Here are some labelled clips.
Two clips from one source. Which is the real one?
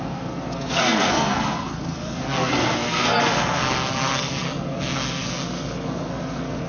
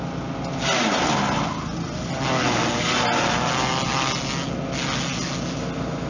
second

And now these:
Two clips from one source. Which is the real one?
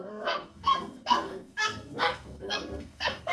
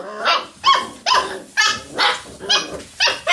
second